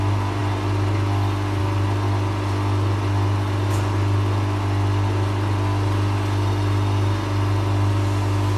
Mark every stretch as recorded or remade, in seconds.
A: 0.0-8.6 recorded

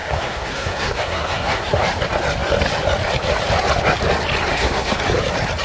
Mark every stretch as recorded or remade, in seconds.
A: 0.0-1.8 remade; 1.8-4.5 recorded; 4.5-5.0 remade; 5.0-5.6 recorded

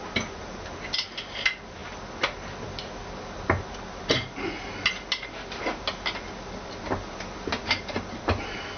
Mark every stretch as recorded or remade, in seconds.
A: 0.0-8.8 recorded

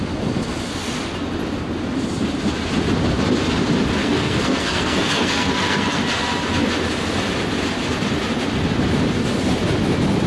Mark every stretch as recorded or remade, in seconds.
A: 0.0-4.0 recorded; 4.0-6.0 remade; 6.0-10.3 recorded

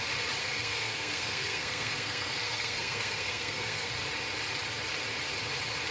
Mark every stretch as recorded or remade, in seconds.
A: 0.0-0.4 recorded; 0.4-3.9 remade; 3.9-5.9 recorded

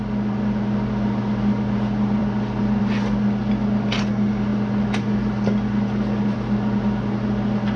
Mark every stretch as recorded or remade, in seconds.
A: 0.0-7.8 recorded